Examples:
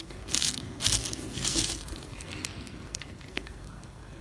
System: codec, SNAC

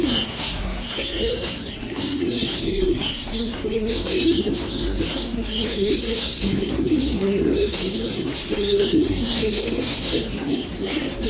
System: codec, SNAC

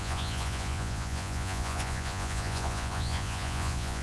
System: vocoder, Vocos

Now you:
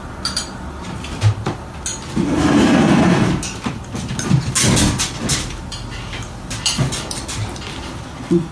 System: none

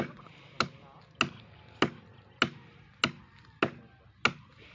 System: none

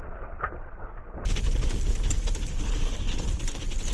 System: none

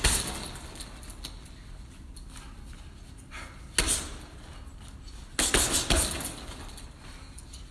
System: none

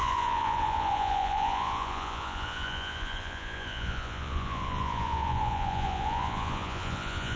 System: vocoder, Vocos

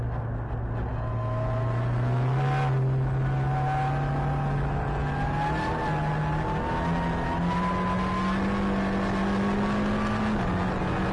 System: none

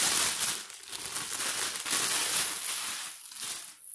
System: none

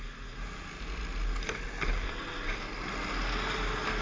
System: none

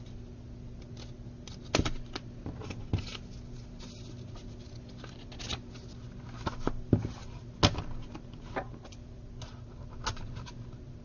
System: none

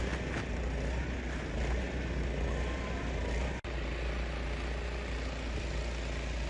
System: none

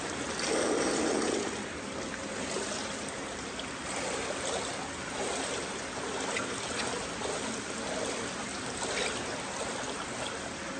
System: none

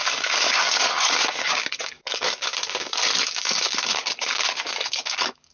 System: codec, DAC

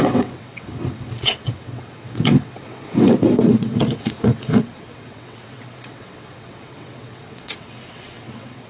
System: vocoder, WaveNeXt